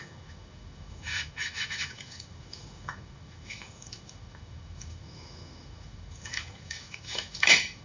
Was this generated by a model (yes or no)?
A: yes